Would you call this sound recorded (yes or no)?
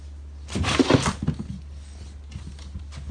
yes